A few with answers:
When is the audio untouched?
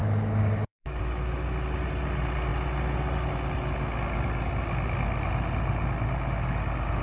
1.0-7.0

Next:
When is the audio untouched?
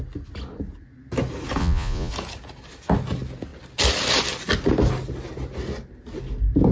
0.0-1.6; 2.1-6.7